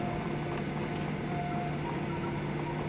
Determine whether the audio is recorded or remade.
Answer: recorded